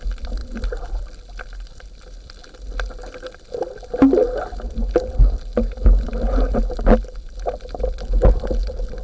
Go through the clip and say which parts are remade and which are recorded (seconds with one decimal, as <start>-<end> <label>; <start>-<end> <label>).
0.0-0.4 recorded; 0.4-2.5 remade; 2.5-9.0 recorded